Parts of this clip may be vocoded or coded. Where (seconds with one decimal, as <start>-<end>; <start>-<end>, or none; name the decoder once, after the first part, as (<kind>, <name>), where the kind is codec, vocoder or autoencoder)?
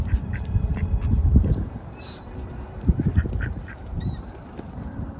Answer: 0.0-5.2 (vocoder, BigVGAN v2)